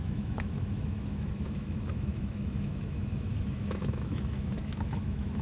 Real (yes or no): no